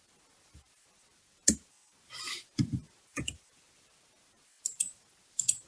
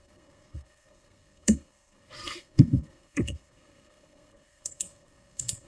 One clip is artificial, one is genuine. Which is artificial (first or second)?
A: second